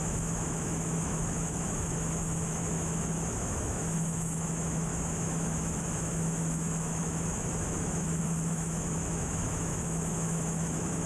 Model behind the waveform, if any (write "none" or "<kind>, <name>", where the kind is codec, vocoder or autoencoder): autoencoder, DAC-VAE